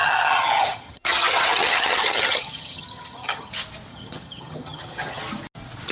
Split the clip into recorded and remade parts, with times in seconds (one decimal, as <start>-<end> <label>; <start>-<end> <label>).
0.0-3.5 remade; 3.5-3.9 recorded; 3.9-5.2 remade; 5.2-5.9 recorded